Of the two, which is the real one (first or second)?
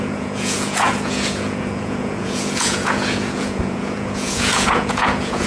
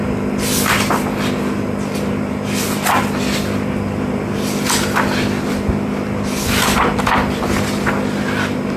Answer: second